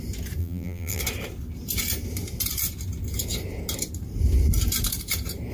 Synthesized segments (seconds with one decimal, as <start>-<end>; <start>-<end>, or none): 0.4-1.0